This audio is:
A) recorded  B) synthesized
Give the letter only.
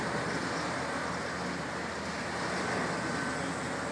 A